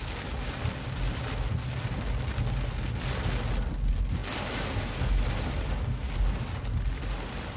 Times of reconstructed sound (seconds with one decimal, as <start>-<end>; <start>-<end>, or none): none